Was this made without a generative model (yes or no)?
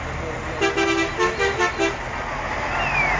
yes